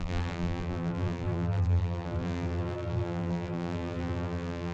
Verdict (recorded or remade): remade